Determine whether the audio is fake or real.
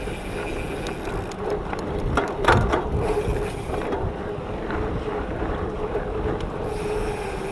real